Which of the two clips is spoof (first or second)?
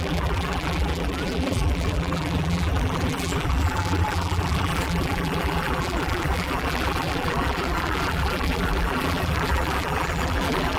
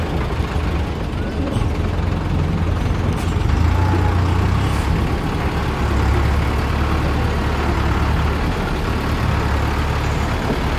first